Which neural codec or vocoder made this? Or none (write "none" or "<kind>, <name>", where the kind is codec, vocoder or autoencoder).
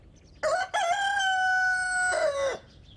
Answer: none